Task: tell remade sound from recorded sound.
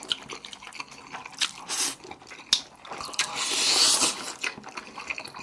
recorded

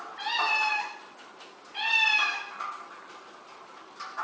recorded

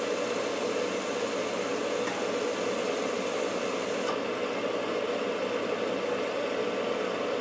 recorded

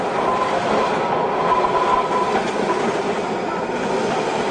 recorded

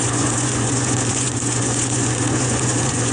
remade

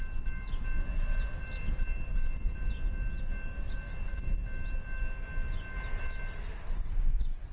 recorded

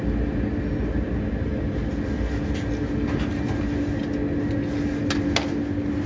recorded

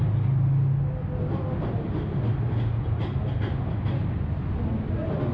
recorded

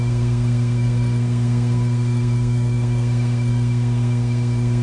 remade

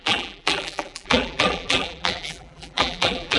remade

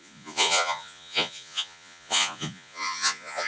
remade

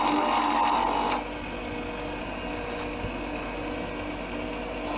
recorded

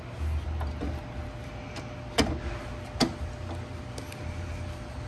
recorded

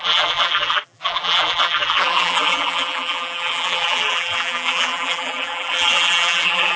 remade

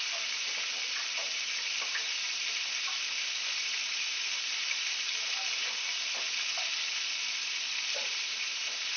recorded